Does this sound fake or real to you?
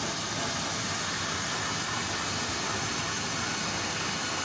real